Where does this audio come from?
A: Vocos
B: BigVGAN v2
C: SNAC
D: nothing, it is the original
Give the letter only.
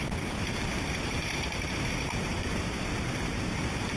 B